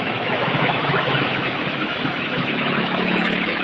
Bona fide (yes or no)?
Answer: no